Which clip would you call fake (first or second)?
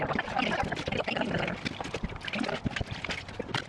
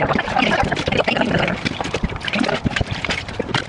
second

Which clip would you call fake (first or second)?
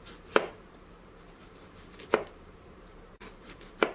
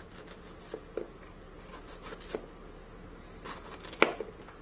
first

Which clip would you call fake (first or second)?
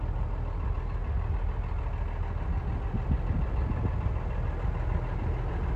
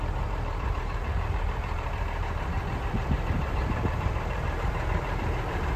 second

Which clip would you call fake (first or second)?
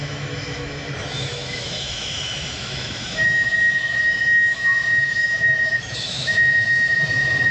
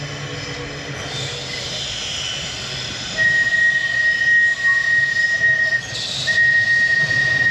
first